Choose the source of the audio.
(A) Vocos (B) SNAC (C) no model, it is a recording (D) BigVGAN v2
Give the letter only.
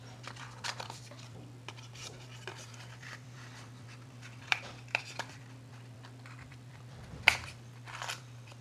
D